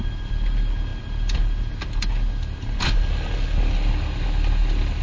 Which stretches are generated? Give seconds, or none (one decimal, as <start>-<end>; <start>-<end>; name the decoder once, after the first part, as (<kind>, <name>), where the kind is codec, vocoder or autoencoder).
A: none